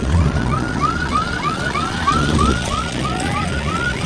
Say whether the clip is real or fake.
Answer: fake